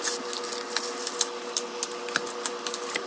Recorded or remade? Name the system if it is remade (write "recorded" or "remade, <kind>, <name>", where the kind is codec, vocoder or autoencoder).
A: recorded